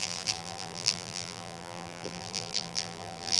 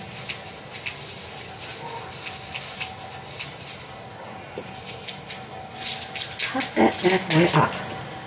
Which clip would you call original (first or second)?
second